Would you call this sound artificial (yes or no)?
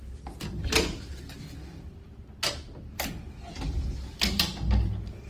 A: no